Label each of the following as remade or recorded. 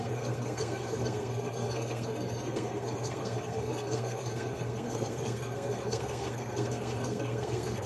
remade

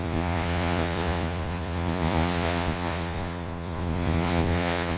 remade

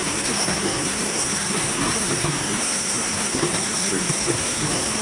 remade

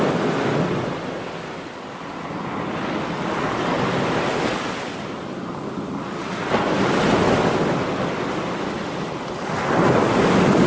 recorded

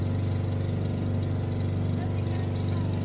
recorded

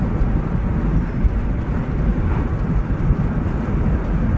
recorded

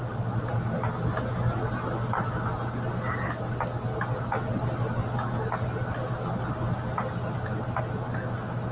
recorded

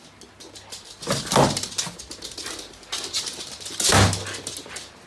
recorded